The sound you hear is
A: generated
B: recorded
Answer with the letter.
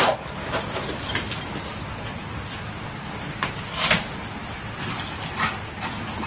B